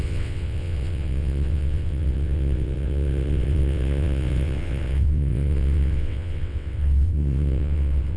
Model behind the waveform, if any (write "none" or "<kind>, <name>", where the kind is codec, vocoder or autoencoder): vocoder, WaveNeXt